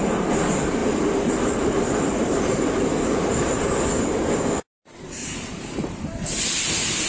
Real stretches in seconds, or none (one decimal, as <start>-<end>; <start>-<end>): 0.0-0.8; 4.0-5.2; 6.0-7.1